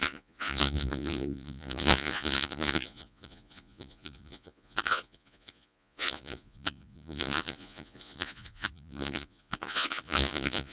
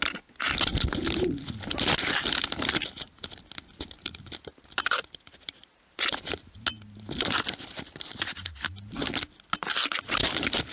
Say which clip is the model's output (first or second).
first